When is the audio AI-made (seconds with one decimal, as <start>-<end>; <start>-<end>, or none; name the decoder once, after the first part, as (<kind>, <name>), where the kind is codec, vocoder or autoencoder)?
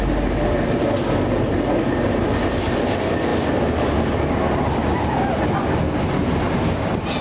none